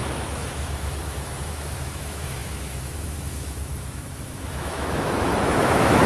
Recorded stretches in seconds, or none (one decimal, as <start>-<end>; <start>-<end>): none